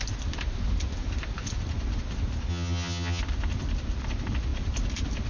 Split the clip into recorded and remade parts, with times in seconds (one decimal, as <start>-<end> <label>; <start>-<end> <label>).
0.0-2.5 recorded; 2.5-3.2 remade; 3.2-5.3 recorded

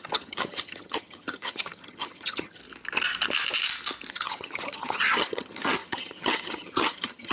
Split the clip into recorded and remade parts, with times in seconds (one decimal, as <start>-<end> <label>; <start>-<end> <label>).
0.0-2.6 remade; 2.6-4.1 recorded; 4.1-7.3 remade